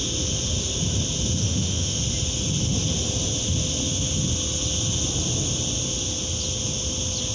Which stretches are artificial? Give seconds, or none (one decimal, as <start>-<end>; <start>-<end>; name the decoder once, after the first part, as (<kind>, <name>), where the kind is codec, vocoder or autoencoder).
1.4-2.0 (autoencoder, DAC-VAE)